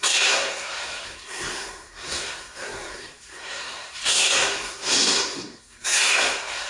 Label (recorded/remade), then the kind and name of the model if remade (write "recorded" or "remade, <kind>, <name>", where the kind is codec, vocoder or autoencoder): remade, codec, SNAC